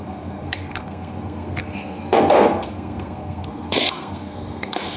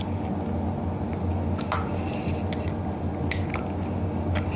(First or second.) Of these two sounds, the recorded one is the second